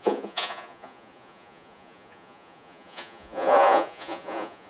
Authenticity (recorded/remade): remade